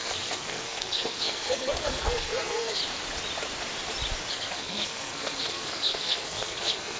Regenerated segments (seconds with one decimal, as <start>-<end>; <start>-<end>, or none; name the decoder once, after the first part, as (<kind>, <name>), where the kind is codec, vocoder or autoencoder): 0.0-2.8 (codec, SNAC); 4.3-7.0